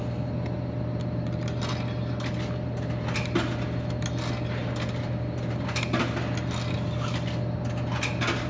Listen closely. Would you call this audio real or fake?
real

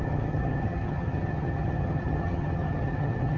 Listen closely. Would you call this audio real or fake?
fake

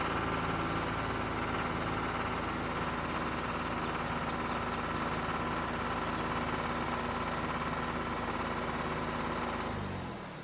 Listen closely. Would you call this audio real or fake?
real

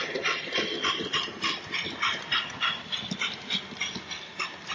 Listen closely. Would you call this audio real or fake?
real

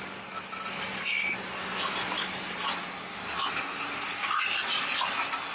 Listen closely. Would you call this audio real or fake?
real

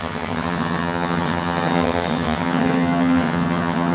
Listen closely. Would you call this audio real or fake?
fake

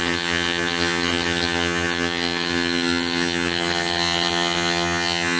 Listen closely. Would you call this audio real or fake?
fake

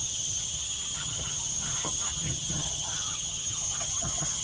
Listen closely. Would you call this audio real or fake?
fake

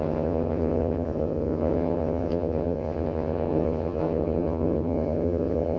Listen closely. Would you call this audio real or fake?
fake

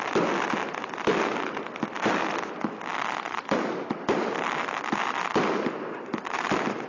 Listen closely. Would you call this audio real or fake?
real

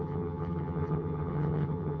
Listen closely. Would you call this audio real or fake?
fake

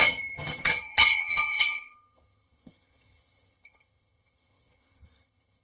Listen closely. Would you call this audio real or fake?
fake